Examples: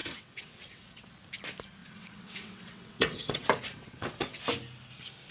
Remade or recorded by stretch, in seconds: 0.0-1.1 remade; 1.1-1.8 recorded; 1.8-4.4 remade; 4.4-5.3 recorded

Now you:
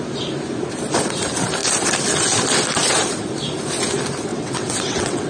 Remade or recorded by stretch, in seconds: 0.0-4.3 recorded; 4.3-5.3 remade